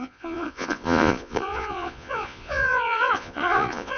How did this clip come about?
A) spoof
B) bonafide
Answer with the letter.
A